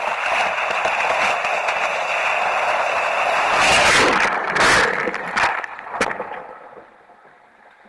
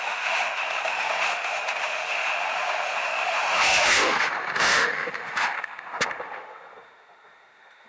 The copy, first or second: second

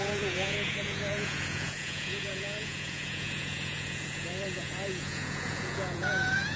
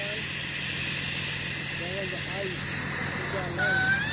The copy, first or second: first